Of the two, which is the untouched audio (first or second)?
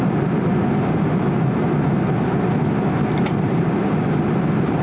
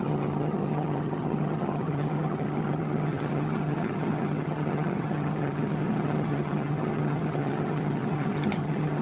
first